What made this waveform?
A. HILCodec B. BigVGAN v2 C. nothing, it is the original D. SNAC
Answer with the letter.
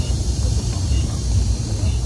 B